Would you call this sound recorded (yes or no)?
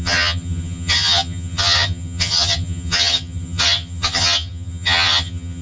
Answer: no